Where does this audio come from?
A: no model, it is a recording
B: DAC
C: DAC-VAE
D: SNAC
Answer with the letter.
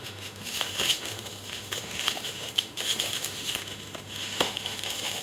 C